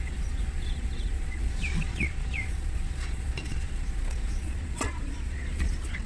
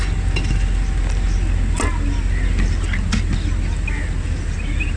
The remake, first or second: first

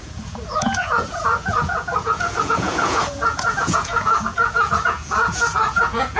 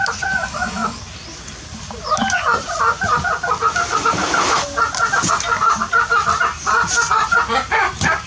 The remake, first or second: first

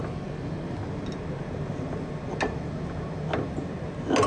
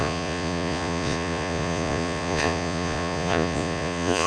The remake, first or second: second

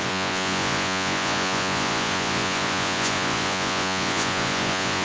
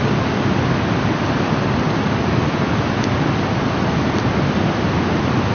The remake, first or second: first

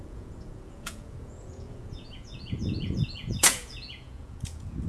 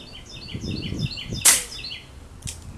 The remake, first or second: first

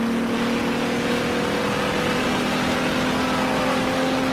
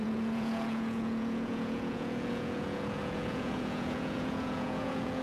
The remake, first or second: second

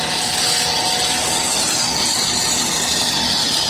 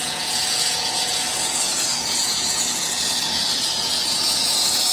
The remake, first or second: second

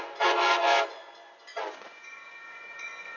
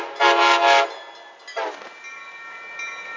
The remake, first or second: first